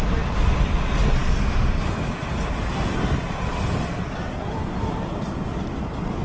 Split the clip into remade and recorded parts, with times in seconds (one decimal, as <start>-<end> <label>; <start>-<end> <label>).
0.0-6.2 recorded